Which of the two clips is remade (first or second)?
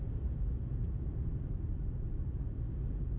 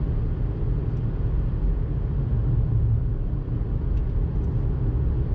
first